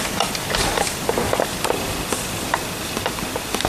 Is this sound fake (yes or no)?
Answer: yes